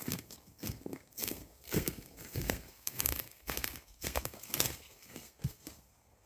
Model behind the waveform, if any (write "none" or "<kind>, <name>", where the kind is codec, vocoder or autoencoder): codec, SNAC